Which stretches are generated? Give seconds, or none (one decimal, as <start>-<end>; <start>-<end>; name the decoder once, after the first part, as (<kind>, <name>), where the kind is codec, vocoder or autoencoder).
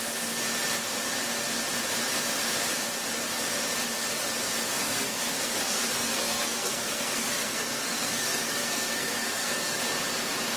4.8-9.8 (codec, SNAC)